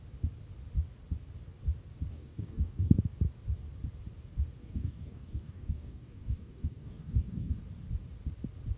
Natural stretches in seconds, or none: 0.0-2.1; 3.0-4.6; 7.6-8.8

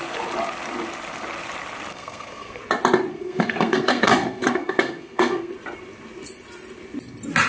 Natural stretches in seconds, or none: 0.0-1.9; 2.6-3.1; 5.5-7.5

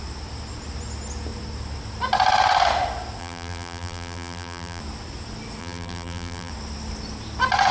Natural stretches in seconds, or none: 0.0-3.2; 4.8-5.6; 6.5-7.7

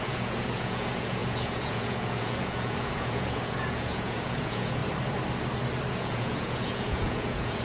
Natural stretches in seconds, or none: 4.8-5.9

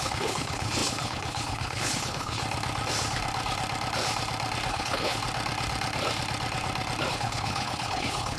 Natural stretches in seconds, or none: 2.4-4.7; 5.2-7.1

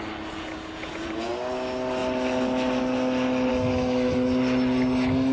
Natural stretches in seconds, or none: 0.0-0.4; 1.3-5.3